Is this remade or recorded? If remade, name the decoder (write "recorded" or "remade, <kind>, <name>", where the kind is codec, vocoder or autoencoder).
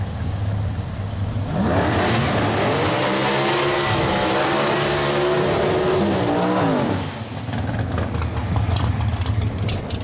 recorded